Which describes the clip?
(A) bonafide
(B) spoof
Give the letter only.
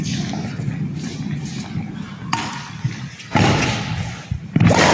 A